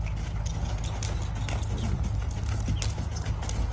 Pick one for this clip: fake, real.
real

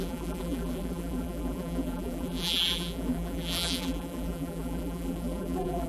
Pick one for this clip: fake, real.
fake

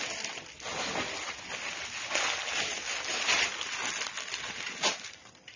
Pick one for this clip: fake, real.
real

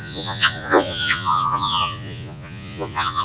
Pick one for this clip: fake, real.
fake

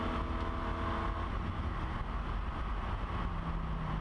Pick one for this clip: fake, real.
real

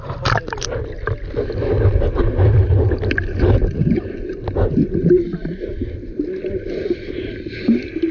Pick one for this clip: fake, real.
real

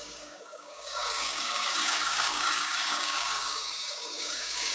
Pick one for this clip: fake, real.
fake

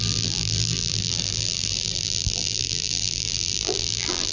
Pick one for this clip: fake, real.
fake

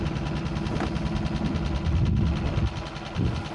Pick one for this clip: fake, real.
real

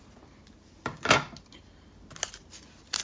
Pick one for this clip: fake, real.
real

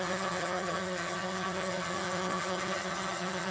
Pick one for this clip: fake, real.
fake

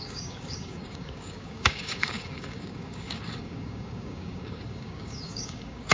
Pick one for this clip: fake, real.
fake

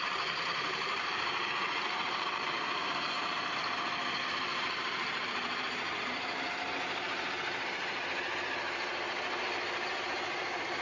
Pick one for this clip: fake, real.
fake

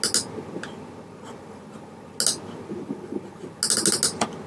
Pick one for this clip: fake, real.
real